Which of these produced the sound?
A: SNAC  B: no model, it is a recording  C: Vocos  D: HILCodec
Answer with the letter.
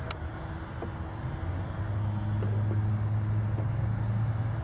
B